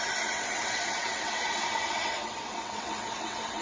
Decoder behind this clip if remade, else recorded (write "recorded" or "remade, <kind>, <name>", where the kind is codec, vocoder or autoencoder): remade, vocoder, WaveNeXt